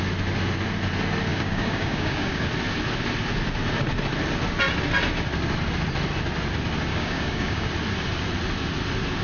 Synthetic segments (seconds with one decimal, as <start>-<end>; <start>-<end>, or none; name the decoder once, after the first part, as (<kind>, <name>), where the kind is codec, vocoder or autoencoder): 1.3-2.5 (codec, DAC); 6.9-7.7